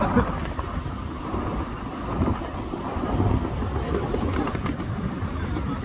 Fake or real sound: real